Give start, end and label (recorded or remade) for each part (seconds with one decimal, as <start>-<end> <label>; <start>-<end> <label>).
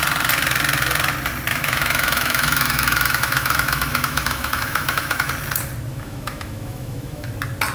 0.0-1.5 recorded; 1.5-5.3 remade; 5.3-5.9 recorded; 5.9-7.3 remade; 7.3-7.7 recorded